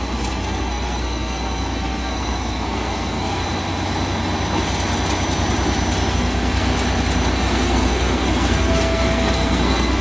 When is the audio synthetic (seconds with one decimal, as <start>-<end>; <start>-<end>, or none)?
0.0-3.4; 6.1-6.7; 7.3-10.0